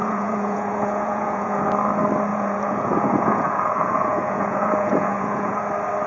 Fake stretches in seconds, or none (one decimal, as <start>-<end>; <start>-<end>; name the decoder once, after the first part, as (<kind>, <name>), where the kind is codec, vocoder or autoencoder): 0.0-1.6 (vocoder, Vocos); 2.3-5.6